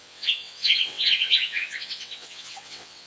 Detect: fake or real fake